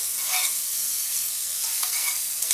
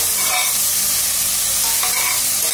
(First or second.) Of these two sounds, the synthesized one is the first